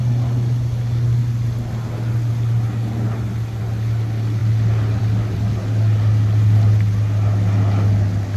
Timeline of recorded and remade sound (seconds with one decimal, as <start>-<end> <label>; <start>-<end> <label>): 0.0-8.4 recorded